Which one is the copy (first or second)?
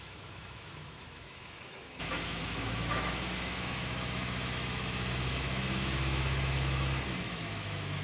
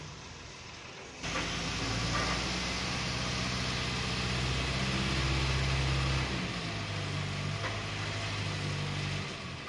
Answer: first